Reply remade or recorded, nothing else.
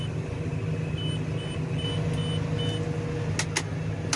recorded